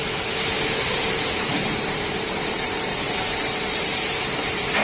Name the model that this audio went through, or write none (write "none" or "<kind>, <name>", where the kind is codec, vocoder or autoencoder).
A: none